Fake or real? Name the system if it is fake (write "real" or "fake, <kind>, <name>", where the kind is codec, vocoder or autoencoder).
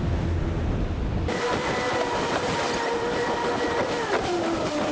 real